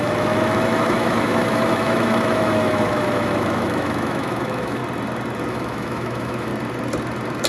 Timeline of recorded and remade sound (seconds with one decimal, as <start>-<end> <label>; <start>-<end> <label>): 0.0-4.8 remade; 4.8-5.5 recorded; 5.5-6.5 remade; 6.5-7.5 recorded